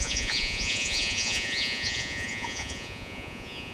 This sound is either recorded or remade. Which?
remade